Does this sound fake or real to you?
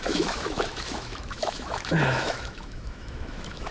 fake